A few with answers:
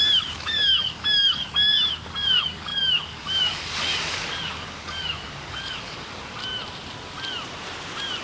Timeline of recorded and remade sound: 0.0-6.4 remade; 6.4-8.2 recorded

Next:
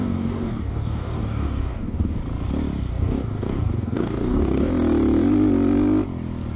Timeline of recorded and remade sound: 0.0-2.2 remade; 2.2-2.9 recorded; 2.9-4.7 remade; 4.7-6.6 recorded